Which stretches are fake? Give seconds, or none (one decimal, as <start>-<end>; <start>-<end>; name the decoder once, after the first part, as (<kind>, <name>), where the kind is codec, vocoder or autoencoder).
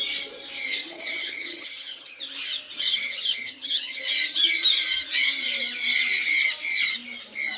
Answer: 0.8-2.2 (vocoder, HiFi-GAN); 2.9-4.0